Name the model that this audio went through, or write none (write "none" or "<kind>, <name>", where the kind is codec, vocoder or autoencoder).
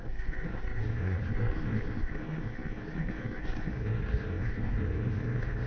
codec, SNAC